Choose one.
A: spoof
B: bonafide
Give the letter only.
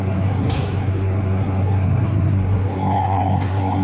A